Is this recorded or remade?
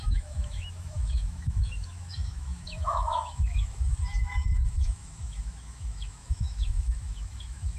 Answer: remade